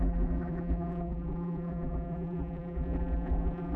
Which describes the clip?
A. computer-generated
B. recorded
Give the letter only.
A